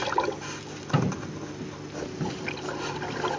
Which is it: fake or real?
real